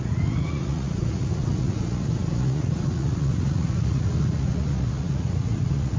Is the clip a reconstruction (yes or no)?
yes